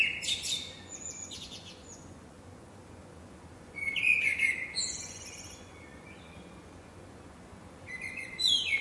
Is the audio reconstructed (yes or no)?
yes